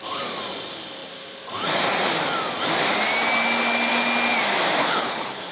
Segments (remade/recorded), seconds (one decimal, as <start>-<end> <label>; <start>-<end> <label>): 0.0-4.8 recorded; 4.8-5.5 remade